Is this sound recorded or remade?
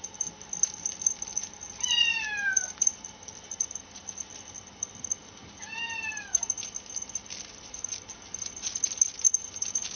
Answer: recorded